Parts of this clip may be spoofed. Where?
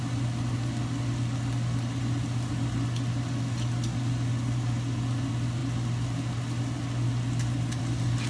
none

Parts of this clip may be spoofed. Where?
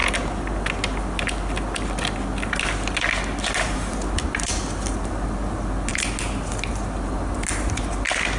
none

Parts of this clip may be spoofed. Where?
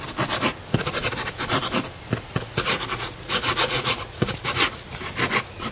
2.3-5.0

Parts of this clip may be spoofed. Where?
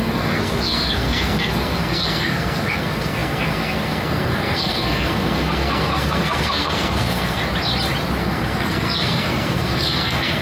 0.0-7.4; 8.2-10.4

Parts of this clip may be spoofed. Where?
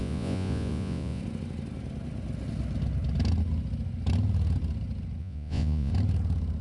0.0-1.2; 5.2-5.9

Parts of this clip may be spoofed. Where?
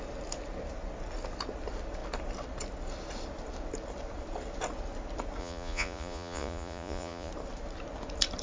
5.4-7.3